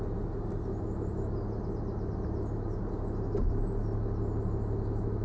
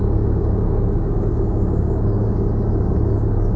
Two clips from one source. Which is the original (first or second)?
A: first